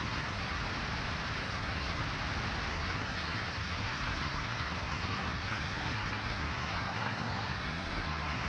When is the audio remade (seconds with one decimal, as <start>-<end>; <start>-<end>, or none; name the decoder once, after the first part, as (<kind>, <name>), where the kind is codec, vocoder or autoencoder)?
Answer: 0.0-0.6 (codec, SNAC); 1.4-2.0; 2.7-8.5